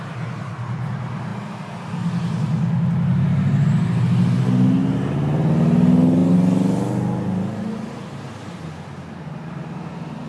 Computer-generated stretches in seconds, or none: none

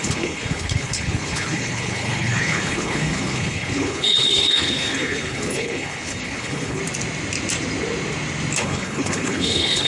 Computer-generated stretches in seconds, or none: 0.0-6.8 (codec, HILCodec); 8.6-9.9